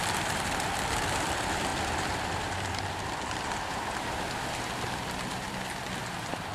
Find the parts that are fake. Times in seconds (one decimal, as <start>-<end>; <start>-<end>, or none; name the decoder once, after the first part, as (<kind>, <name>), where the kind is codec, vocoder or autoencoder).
0.0-6.5 (vocoder, BigVGAN v2)